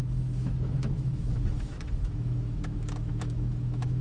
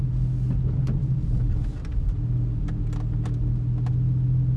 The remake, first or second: first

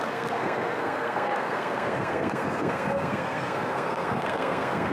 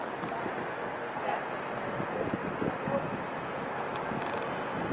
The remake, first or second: first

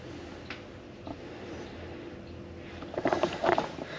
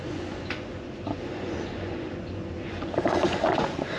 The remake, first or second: second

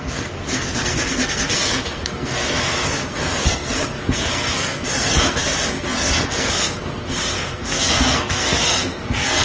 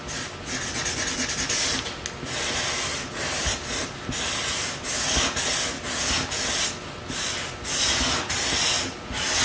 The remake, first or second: first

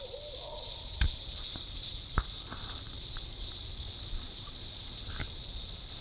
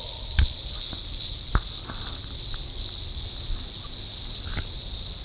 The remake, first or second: first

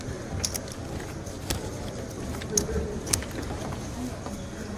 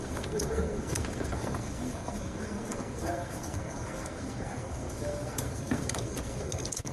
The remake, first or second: second